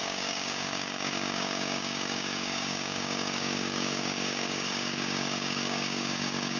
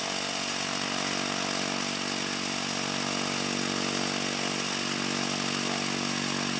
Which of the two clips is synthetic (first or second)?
first